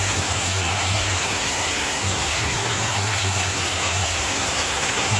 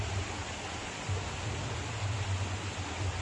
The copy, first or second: first